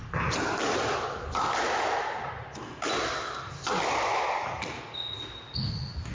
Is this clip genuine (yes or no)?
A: yes